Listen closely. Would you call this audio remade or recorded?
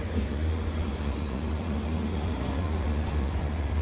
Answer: remade